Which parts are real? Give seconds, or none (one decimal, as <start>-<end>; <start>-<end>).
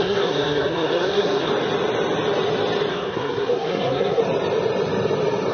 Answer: 1.5-2.9; 4.2-5.5